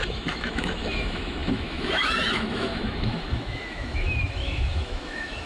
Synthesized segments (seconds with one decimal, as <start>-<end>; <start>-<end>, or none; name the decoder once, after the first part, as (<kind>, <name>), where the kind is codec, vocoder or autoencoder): 0.0-5.5 (autoencoder, DAC-VAE)